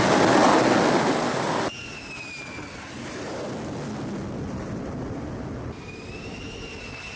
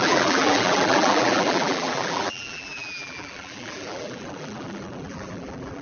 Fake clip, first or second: second